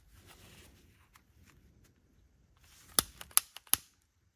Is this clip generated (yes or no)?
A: no